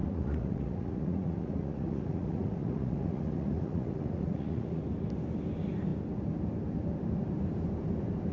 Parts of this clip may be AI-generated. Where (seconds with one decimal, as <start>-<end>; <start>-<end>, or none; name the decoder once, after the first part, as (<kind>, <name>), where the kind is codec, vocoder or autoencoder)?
0.0-4.8 (vocoder, Vocos)